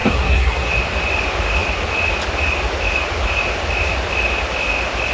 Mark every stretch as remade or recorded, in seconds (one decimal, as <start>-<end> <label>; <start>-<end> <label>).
0.0-0.7 remade; 0.7-5.1 recorded